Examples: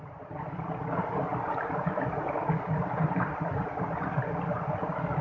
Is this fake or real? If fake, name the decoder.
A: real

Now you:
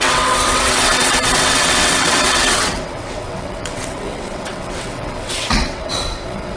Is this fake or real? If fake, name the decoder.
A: fake, vocoder, WaveNeXt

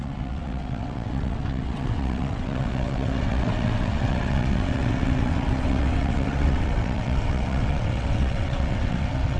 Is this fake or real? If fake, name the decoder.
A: fake, vocoder, WaveNeXt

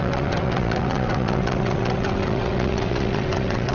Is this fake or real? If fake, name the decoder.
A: fake, vocoder, WaveNeXt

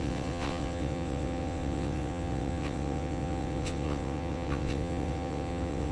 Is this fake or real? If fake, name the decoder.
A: fake, vocoder, WaveNeXt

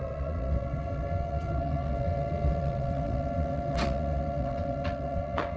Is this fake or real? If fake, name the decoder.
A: fake, vocoder, WaveNeXt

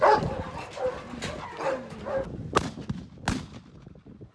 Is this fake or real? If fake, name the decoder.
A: real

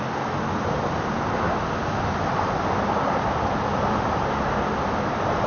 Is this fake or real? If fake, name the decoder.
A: real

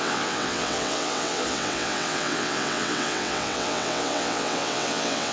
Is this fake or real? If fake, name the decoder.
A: fake, vocoder, WaveNeXt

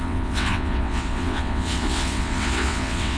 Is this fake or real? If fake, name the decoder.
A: fake, vocoder, WaveNeXt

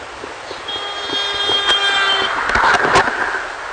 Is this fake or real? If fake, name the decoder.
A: real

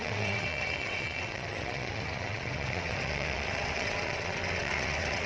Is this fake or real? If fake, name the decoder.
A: fake, vocoder, WaveNeXt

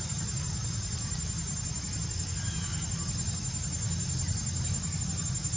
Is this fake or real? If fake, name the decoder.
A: real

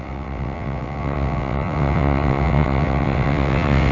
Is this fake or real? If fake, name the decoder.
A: fake, vocoder, WaveNeXt